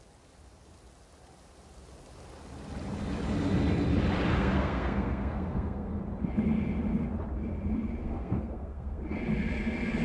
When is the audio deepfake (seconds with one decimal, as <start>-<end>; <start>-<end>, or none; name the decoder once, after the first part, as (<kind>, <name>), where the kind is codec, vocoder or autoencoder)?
4.3-6.0 (codec, SNAC); 8.0-9.0